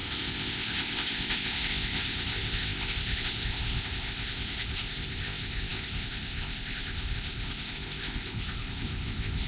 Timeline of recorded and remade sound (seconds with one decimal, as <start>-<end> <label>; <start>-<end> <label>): 0.0-9.5 remade